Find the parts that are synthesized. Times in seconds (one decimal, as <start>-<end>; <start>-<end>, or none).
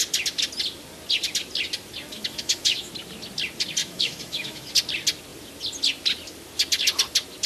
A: 2.1-2.9; 3.8-4.7